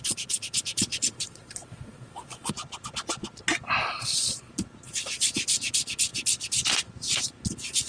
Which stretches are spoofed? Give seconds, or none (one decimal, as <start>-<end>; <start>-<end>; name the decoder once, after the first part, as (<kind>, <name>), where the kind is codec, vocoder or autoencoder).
0.9-2.5 (vocoder, Vocos); 3.8-4.5